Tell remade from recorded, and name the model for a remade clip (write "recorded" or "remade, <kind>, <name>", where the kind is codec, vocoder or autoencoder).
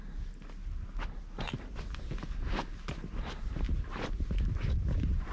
recorded